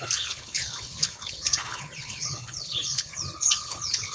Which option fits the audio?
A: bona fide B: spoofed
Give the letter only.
B